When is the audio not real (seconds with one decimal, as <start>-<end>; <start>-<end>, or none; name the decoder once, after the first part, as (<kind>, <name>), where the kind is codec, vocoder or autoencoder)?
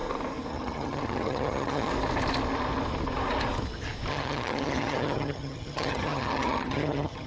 0.5-1.9 (vocoder, HiFi-GAN); 4.1-7.3